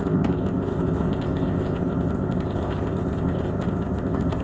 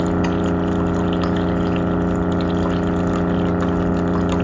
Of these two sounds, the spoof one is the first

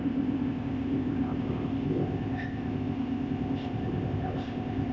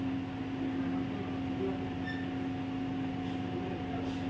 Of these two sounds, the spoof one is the first